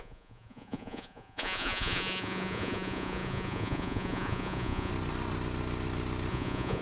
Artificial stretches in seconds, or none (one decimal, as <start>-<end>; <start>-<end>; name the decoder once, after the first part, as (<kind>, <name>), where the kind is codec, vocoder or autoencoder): 0.0-4.9 (vocoder, Vocos); 6.3-6.8